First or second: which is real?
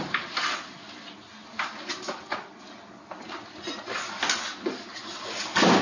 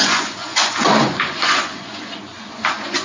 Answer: first